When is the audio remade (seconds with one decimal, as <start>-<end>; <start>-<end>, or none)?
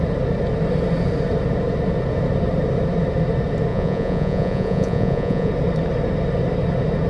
3.7-5.5